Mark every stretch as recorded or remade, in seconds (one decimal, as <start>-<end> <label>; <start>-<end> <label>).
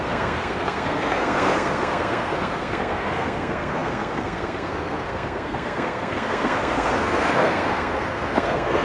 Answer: 0.0-8.8 remade